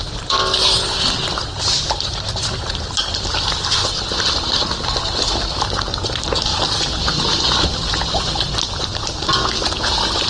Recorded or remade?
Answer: recorded